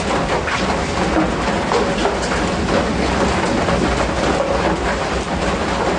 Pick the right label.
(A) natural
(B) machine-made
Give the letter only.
A